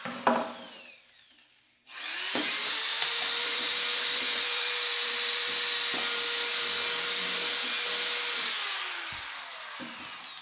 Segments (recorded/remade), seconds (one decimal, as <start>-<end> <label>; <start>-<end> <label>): 0.0-2.9 recorded; 2.9-5.5 remade; 5.5-10.4 recorded